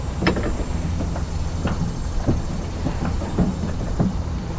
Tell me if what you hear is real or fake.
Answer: real